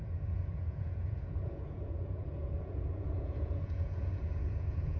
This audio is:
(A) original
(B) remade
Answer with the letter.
B